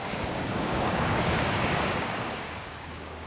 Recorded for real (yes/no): no